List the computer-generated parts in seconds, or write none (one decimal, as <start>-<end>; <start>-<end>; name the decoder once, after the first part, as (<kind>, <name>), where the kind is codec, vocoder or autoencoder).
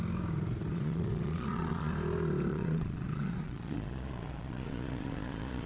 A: 0.7-1.9 (vocoder, Vocos); 2.5-5.7